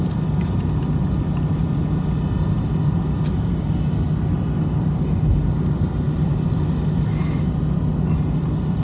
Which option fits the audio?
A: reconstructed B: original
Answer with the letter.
B